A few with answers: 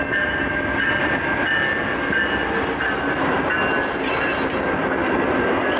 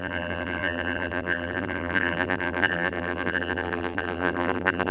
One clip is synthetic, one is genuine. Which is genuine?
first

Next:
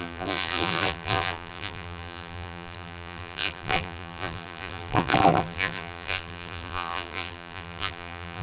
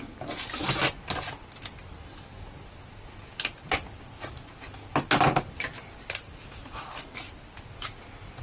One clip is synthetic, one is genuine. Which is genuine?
second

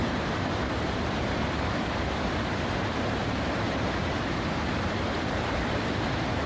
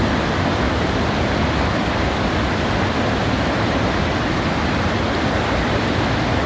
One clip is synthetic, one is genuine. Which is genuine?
second